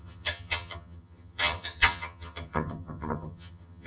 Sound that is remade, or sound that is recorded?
remade